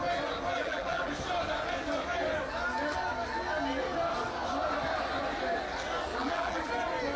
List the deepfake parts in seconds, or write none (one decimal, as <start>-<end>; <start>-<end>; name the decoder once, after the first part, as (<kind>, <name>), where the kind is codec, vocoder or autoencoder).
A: 0.5-1.1 (vocoder, BigVGAN v2); 6.1-6.7